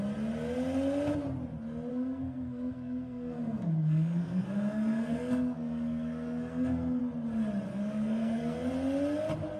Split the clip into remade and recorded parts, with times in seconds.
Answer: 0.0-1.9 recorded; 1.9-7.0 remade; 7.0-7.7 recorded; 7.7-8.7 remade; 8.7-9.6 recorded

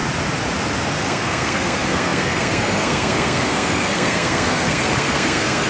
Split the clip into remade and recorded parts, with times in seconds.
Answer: 0.0-1.0 recorded; 1.0-5.7 remade

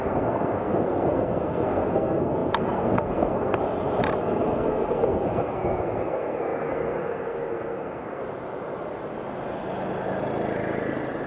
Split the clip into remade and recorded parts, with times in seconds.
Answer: 0.0-3.6 remade; 3.6-4.2 recorded; 4.2-8.2 remade; 8.2-11.3 recorded